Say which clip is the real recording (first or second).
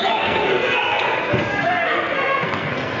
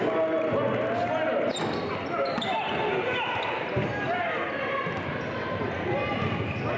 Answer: second